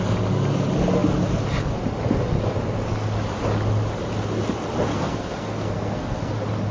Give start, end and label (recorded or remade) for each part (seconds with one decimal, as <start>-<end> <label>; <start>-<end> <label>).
0.0-4.9 recorded; 4.9-6.3 remade; 6.3-6.7 recorded

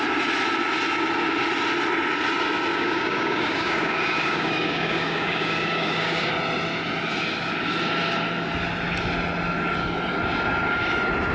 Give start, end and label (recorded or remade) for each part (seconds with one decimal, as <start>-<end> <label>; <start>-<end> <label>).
0.0-2.7 recorded; 2.7-6.3 remade; 6.3-11.3 recorded

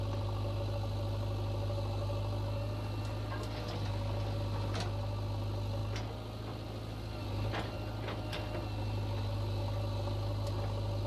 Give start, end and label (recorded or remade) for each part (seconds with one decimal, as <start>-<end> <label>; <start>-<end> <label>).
0.0-11.1 recorded

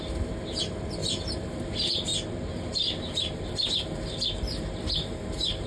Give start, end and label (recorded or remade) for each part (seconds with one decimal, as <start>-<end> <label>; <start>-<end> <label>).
0.0-1.0 recorded; 1.0-1.7 remade; 1.7-2.1 recorded; 2.1-5.7 remade

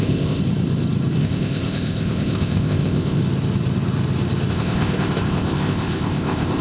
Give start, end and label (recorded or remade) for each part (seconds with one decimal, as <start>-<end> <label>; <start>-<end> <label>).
0.0-0.4 remade; 0.4-1.2 recorded; 1.2-3.2 remade; 3.2-4.5 recorded; 4.5-6.6 remade

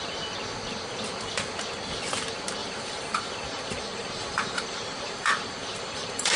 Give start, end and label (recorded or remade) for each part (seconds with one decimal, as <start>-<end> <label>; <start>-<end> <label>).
0.0-2.6 recorded; 2.6-6.4 remade

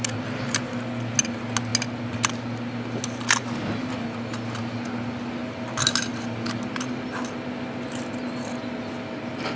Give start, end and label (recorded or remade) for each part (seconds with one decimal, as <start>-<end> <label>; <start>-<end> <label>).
0.0-9.6 recorded

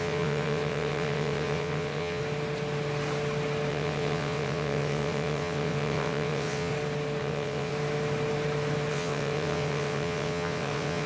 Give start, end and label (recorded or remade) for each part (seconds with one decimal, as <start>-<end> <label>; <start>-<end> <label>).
0.0-2.2 remade; 2.2-3.7 recorded; 3.7-6.7 remade; 6.7-7.2 recorded; 7.2-7.7 remade; 7.7-8.9 recorded; 8.9-11.1 remade